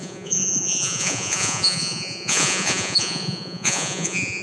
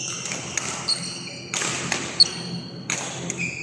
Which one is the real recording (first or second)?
second